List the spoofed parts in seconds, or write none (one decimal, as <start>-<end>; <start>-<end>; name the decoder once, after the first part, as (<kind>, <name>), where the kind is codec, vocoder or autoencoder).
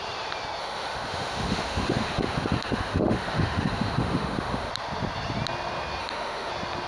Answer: 0.6-4.7 (autoencoder, DAC-VAE); 6.0-6.5